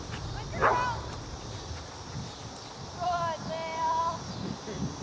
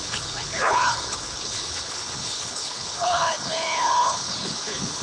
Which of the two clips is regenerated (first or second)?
second